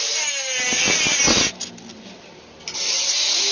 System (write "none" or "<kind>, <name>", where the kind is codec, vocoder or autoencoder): none